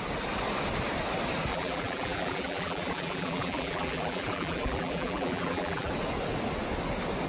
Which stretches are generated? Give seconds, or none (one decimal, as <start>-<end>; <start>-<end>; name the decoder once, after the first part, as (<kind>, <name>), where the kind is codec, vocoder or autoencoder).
1.5-5.9 (vocoder, BigVGAN v2)